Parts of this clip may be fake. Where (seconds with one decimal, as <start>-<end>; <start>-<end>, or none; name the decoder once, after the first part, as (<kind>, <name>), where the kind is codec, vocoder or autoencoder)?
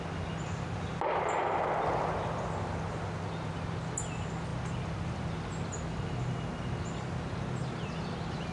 none